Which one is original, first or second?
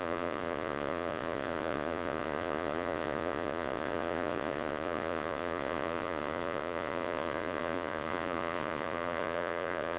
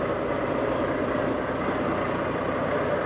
second